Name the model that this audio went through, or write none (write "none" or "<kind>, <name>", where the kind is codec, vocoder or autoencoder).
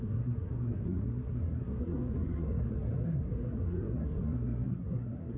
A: codec, SNAC